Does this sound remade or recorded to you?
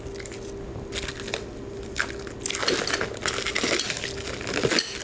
recorded